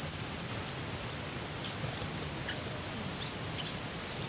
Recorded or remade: recorded